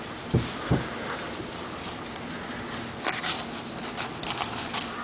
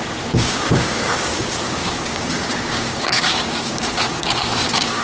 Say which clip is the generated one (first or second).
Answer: second